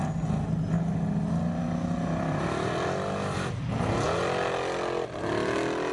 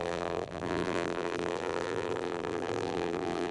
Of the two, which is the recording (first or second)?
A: first